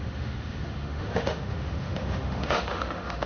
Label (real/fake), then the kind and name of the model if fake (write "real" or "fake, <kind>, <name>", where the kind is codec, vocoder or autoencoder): fake, autoencoder, DAC-VAE